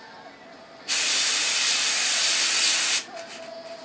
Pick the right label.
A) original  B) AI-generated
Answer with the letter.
A